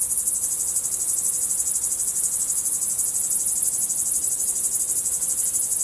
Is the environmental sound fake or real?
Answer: real